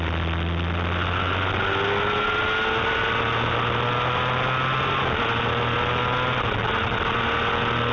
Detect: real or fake real